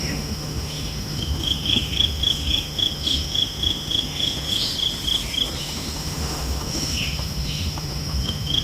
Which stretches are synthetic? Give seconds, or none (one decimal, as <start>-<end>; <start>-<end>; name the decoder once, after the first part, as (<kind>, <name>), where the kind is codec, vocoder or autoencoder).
0.0-4.7 (autoencoder, DAC-VAE); 5.6-8.6